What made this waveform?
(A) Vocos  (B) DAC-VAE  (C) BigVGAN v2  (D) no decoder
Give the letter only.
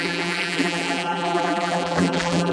C